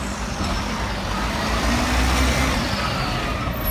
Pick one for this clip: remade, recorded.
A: recorded